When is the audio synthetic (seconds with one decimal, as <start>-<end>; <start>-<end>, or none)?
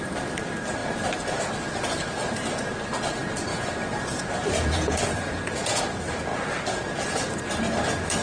3.5-5.8; 6.3-7.3